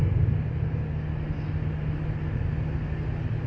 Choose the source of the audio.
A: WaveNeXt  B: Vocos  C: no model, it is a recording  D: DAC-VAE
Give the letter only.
C